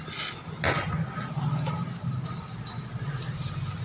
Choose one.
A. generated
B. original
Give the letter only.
B